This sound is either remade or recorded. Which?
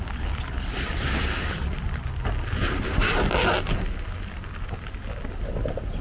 recorded